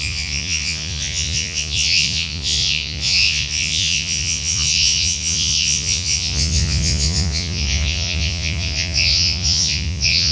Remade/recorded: remade